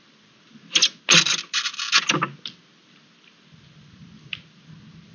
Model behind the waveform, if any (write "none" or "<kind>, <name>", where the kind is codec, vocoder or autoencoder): none